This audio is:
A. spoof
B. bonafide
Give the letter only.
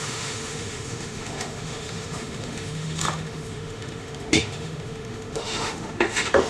A